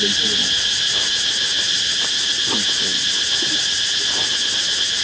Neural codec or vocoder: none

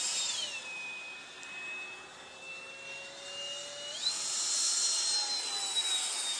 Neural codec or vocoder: none